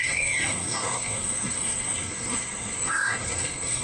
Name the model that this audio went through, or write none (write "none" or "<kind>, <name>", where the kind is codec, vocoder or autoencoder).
codec, SNAC